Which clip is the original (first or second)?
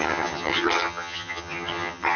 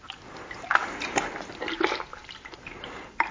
second